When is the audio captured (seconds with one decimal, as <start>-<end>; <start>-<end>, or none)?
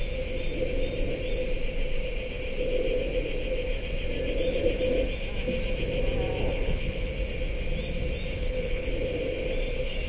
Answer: 0.0-6.4; 7.1-8.3; 8.9-10.1